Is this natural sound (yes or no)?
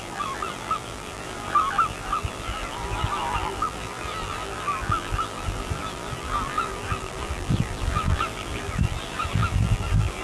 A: no